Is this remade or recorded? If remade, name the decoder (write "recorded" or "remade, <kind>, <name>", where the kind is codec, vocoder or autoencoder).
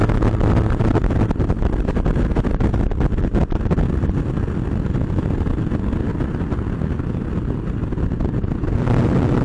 recorded